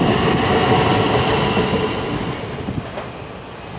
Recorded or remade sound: recorded